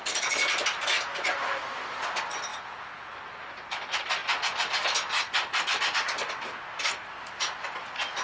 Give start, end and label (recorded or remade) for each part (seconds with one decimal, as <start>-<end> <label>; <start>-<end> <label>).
0.0-2.5 recorded; 2.5-3.1 remade; 3.1-8.2 recorded